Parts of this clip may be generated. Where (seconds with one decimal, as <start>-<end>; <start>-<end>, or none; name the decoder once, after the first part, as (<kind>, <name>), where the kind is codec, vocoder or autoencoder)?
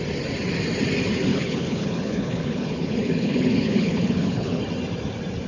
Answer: 1.3-4.6 (codec, HILCodec)